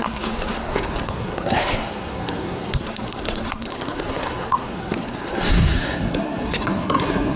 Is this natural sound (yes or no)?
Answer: no